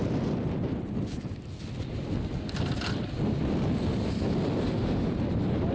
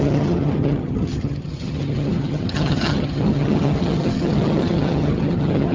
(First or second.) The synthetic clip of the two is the second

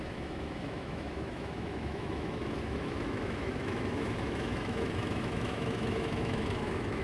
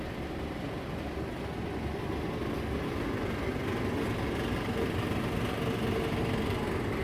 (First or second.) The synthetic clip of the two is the first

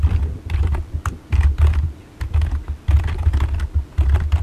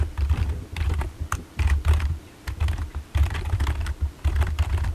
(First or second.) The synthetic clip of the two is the second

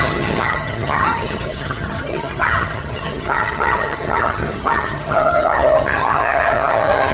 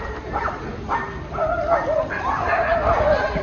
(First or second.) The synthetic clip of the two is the first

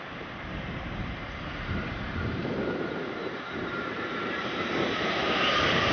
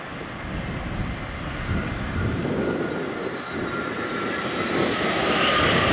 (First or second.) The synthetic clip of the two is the first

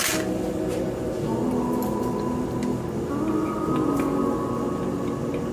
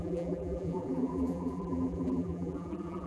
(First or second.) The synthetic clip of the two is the second